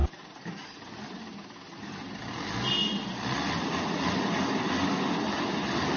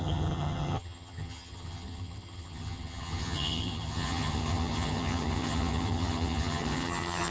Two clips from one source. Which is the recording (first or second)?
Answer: first